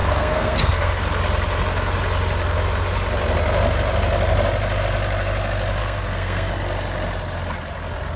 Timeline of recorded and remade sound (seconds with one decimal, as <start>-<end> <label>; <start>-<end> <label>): 0.0-1.0 remade; 1.0-5.8 recorded; 5.8-6.5 remade; 6.5-8.2 recorded

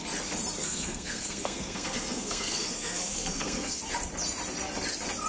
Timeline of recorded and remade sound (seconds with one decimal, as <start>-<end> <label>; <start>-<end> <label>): 0.0-0.6 recorded; 0.6-3.8 remade; 3.8-5.3 recorded